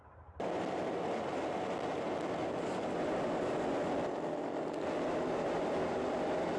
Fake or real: real